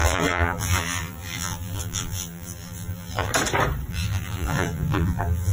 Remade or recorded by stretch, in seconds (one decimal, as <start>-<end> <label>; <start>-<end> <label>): 0.0-3.3 remade; 3.3-3.9 recorded; 3.9-5.5 remade